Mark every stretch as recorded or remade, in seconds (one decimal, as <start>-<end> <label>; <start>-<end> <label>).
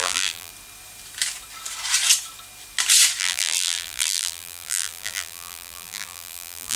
0.0-0.5 remade; 0.5-3.2 recorded; 3.2-6.8 remade